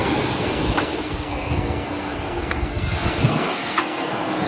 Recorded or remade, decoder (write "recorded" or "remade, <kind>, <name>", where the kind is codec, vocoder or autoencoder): remade, codec, SNAC